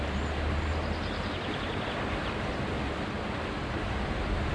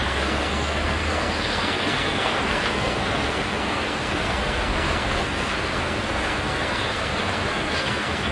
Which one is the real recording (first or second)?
first